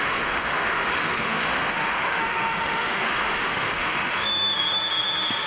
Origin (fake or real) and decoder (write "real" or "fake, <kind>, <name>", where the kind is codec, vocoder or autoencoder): fake, autoencoder, DAC-VAE